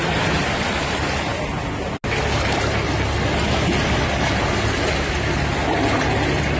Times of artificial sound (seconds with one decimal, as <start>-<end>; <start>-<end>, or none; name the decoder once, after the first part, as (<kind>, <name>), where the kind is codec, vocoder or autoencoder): none